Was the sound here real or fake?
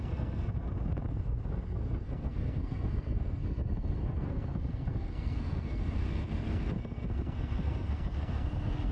fake